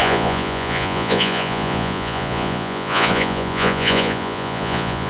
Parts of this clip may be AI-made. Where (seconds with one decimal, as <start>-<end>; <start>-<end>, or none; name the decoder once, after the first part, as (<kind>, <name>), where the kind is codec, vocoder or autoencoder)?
0.0-5.1 (vocoder, Vocos)